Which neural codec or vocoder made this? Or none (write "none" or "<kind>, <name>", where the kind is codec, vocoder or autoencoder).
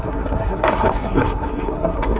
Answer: codec, SNAC